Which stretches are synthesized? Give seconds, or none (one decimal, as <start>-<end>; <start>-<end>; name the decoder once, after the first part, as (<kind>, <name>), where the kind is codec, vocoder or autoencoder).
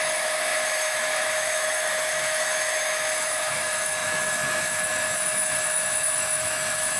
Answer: 0.0-7.0 (autoencoder, DAC-VAE)